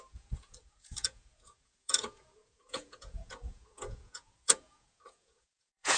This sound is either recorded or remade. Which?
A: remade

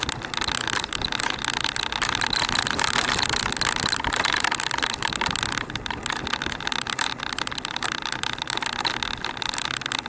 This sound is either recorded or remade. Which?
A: recorded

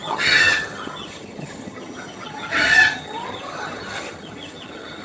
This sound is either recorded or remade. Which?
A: remade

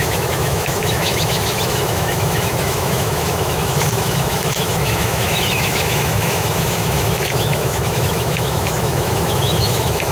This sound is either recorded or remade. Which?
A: remade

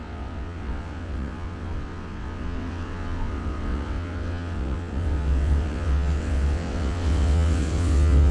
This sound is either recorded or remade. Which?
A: remade